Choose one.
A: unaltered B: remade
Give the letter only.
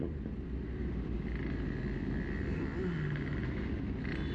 A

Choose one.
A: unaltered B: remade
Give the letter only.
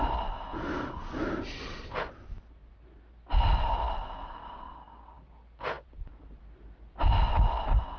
A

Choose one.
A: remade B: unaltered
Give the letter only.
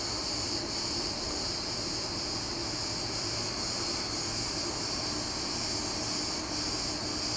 B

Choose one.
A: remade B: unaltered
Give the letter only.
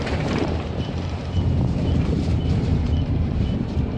A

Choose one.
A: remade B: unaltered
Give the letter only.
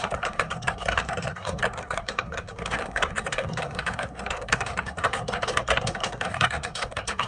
A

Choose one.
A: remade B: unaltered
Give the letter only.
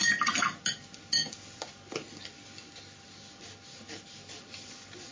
B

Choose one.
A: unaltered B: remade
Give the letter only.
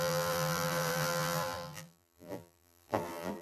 B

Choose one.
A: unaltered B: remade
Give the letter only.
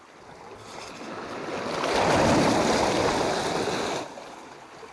A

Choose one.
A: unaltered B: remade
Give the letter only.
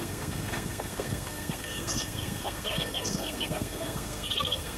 B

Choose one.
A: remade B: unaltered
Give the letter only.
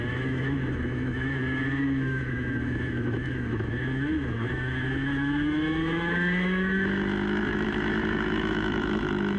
A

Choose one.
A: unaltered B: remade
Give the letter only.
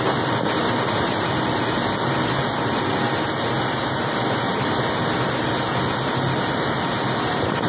A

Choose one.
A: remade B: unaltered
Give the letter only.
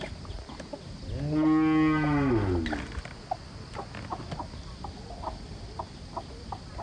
B